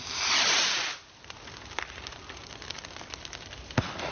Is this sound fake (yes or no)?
no